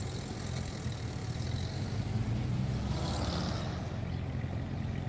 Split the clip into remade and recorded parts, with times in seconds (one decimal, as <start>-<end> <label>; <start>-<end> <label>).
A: 0.0-5.1 recorded